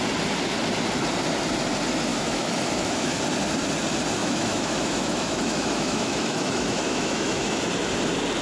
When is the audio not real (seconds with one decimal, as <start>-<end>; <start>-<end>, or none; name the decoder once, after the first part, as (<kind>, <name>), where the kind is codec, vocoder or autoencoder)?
2.1-3.2 (autoencoder, DAC-VAE); 4.2-7.6